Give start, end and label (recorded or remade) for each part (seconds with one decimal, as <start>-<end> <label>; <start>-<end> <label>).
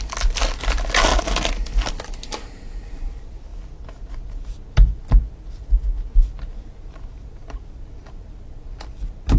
0.0-9.4 recorded